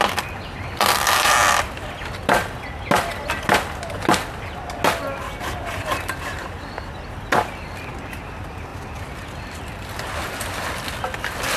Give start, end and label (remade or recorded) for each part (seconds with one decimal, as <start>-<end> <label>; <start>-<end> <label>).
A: 0.0-11.6 recorded